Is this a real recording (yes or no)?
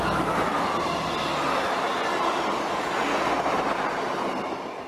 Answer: yes